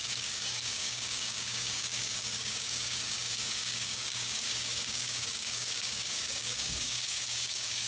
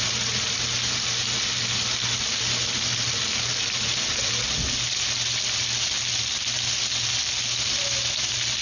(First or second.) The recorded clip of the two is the second